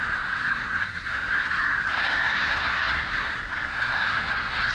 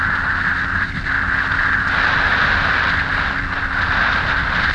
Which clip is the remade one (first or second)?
first